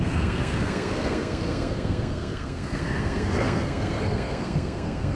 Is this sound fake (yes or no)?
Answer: yes